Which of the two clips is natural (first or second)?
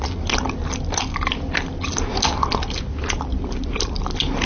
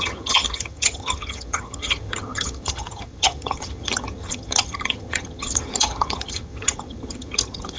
first